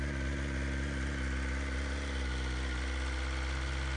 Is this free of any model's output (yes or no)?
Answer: yes